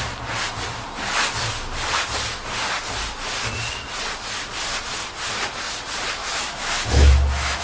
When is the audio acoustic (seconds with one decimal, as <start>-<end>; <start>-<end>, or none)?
0.0-6.2